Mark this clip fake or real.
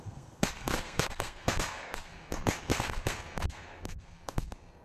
fake